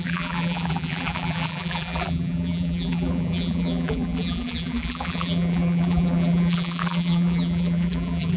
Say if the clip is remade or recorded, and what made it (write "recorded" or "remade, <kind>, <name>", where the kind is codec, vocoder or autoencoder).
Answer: remade, vocoder, BigVGAN v2